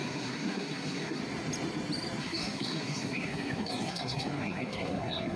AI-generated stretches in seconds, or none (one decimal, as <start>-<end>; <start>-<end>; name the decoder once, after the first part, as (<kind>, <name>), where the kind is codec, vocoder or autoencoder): 0.0-1.2 (codec, SNAC); 2.2-5.4